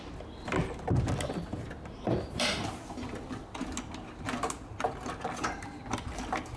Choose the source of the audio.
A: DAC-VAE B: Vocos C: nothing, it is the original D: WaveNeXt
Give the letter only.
C